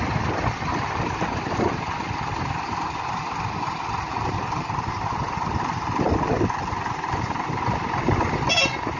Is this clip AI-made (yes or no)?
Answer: no